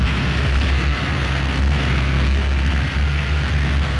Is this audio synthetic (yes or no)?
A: yes